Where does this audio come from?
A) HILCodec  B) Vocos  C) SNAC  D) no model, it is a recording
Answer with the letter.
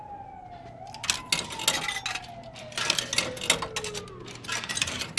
D